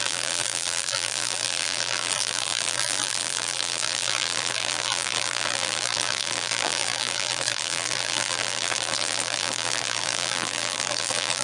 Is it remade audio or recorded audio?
remade